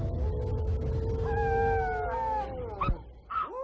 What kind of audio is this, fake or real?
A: real